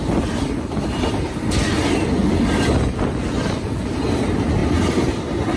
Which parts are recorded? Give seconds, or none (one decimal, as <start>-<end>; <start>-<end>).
0.0-5.6